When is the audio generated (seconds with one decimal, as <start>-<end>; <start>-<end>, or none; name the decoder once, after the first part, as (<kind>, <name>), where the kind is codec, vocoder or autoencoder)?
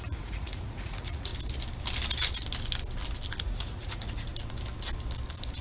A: 0.0-1.3 (vocoder, Vocos); 3.4-4.3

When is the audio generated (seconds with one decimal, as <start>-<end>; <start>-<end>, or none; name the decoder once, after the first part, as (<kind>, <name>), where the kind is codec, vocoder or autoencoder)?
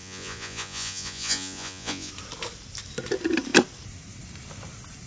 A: 0.0-2.1 (vocoder, Vocos)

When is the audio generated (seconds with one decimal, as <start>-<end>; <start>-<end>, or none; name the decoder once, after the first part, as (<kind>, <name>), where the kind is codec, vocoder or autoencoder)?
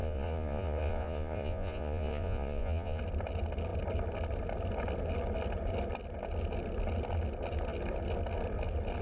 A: 0.0-3.0 (vocoder, Vocos)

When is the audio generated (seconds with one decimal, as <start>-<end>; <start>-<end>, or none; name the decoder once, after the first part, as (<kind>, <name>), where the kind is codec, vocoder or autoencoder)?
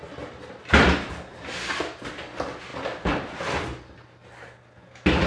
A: none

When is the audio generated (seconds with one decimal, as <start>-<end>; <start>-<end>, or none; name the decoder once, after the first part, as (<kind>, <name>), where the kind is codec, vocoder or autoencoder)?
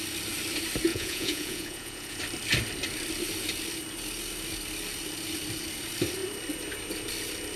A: 0.9-2.2 (vocoder, Vocos)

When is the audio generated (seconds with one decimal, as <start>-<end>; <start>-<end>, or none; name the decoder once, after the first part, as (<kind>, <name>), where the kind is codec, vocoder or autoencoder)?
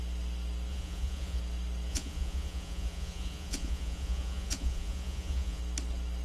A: 0.7-1.4 (vocoder, Vocos); 1.9-5.6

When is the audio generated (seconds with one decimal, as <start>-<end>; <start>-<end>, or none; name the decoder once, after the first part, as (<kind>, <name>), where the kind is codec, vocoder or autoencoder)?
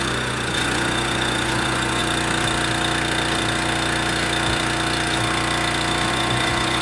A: 0.0-2.0 (vocoder, Vocos); 6.1-6.8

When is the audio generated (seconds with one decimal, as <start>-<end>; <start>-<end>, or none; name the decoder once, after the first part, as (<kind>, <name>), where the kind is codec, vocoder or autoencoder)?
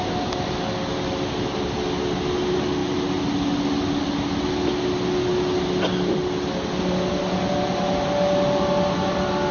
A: none